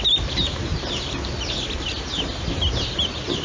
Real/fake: real